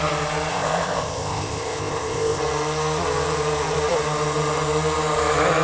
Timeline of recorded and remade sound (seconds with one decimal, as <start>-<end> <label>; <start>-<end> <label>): 0.0-0.5 recorded; 0.5-2.4 remade; 2.4-5.6 recorded